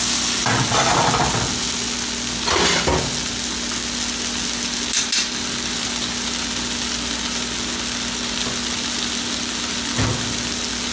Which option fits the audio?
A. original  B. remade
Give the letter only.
A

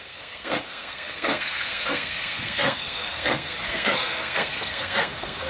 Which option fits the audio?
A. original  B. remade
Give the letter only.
B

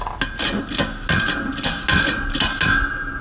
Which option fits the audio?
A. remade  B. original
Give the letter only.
B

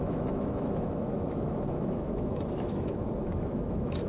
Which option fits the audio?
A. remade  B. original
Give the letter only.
A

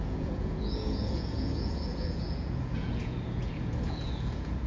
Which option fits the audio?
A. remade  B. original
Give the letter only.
A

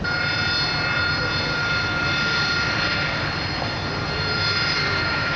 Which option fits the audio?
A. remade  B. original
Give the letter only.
B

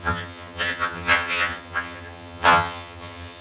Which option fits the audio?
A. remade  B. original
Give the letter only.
A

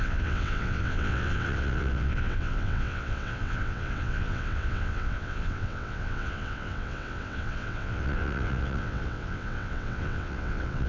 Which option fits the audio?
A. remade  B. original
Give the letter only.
A